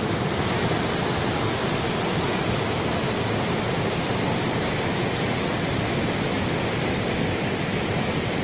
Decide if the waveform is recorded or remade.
recorded